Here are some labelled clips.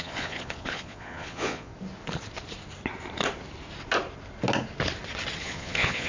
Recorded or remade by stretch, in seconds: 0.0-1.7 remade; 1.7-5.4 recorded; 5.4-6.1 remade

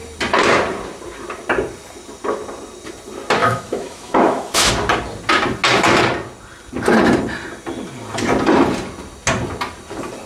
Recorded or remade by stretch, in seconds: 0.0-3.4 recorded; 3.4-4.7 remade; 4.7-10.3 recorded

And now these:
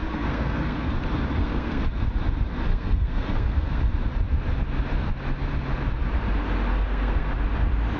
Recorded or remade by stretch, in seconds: 0.0-0.9 remade; 0.9-1.4 recorded; 1.4-2.1 remade; 2.1-2.7 recorded; 2.7-3.8 remade; 3.8-6.7 recorded; 6.7-7.3 remade; 7.3-8.0 recorded

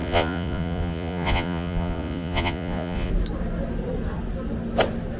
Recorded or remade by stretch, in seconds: 0.0-3.1 remade; 3.1-5.2 recorded

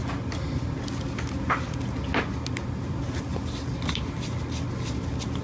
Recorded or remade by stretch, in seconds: 0.0-5.4 recorded

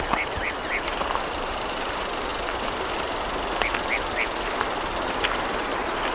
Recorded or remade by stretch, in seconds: 0.0-0.6 remade; 0.6-1.2 recorded; 1.2-2.3 remade; 2.3-6.1 recorded